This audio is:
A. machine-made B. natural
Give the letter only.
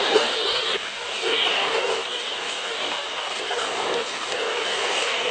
A